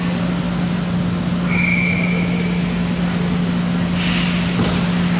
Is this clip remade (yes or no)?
no